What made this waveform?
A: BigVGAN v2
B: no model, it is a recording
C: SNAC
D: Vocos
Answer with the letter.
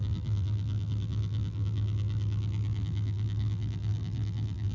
A